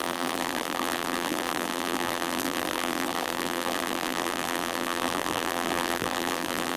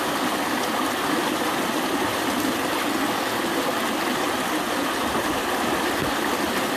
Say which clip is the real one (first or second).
second